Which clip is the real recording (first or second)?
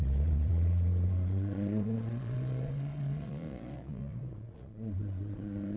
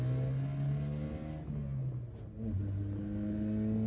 second